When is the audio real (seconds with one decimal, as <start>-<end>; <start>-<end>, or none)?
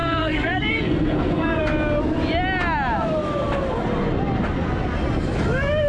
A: 1.6-5.9